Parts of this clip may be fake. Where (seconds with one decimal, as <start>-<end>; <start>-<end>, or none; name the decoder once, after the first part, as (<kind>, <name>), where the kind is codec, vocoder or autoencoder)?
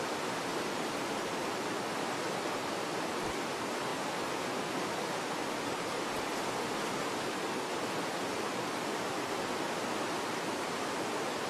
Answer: 0.5-1.5 (vocoder, BigVGAN v2); 5.4-7.6